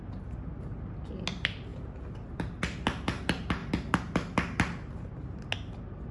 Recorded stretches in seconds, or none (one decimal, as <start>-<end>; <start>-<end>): 0.0-6.1